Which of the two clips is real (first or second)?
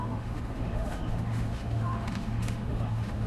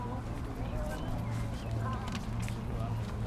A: second